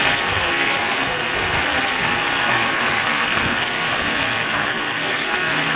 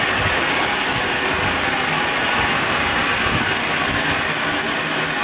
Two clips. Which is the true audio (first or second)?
second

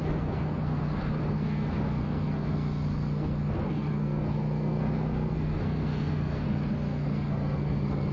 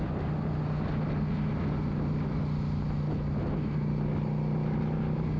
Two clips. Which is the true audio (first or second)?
second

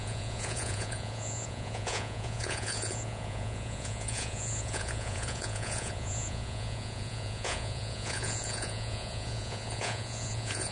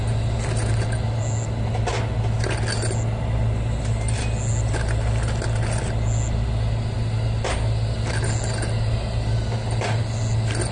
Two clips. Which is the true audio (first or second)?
second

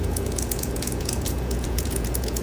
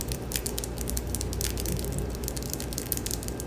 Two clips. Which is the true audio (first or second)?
second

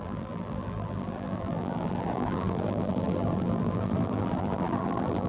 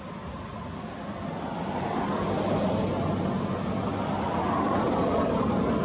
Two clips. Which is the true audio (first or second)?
second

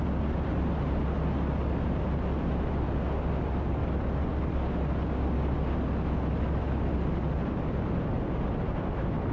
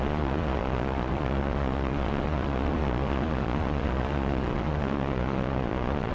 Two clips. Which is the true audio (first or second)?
first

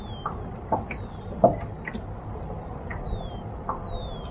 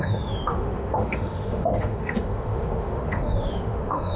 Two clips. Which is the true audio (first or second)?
first